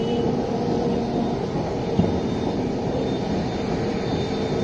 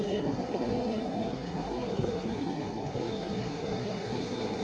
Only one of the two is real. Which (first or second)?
first